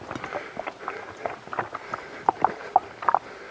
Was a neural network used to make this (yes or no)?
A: no